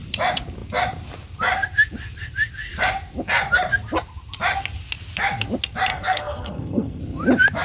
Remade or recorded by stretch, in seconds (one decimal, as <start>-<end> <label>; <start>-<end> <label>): 0.0-5.9 recorded; 5.9-7.0 remade; 7.0-7.6 recorded